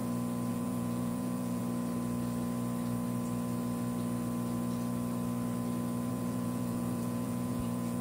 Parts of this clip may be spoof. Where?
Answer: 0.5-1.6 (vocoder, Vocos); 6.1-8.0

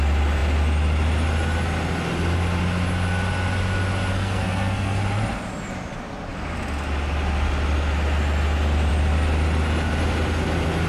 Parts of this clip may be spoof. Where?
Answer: 4.1-5.0 (codec, SNAC)

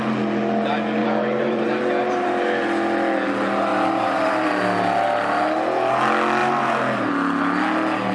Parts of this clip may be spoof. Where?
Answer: 1.0-1.8 (vocoder, BigVGAN v2); 3.7-4.5; 6.4-7.1

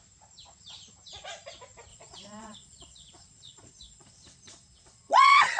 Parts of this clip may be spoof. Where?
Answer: 1.9-5.6 (vocoder, Vocos)